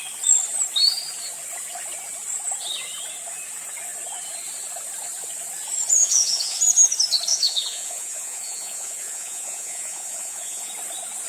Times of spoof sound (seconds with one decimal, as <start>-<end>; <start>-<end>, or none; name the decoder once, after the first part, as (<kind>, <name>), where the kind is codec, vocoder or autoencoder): 6.0-6.6 (vocoder, Vocos); 7.3-10.7